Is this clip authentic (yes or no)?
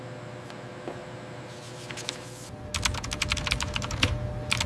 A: yes